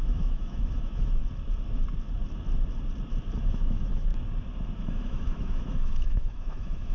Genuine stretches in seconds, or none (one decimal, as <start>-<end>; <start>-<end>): 1.2-3.4; 4.1-4.8